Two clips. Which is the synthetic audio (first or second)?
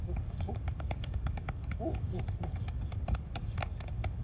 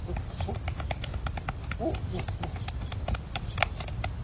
first